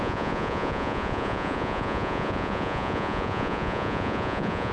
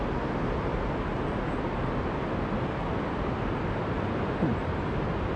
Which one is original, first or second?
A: second